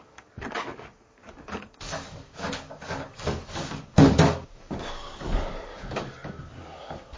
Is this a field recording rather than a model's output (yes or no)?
no